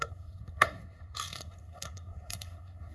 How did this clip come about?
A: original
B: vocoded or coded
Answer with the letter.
B